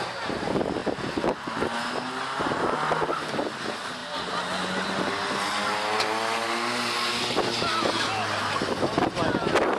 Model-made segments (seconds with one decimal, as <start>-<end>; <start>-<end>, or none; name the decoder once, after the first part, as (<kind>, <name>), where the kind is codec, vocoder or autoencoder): none